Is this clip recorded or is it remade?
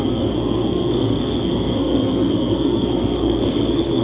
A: remade